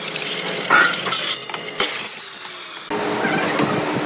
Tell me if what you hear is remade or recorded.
recorded